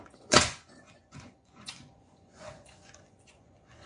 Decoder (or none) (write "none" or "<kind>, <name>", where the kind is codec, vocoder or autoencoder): vocoder, Vocos